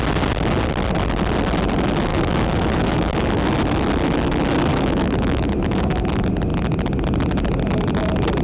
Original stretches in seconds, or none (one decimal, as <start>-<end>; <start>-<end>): 0.0-2.1; 3.5-4.7; 5.9-8.4